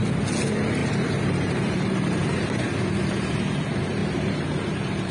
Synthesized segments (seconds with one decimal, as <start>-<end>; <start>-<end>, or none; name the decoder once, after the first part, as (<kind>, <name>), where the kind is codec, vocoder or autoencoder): 0.8-2.7 (vocoder, BigVGAN v2); 4.0-5.1